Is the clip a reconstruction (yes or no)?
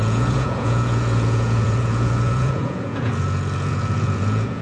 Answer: yes